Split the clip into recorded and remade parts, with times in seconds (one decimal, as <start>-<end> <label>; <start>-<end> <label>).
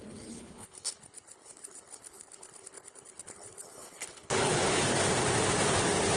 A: 0.0-4.9 remade; 4.9-6.2 recorded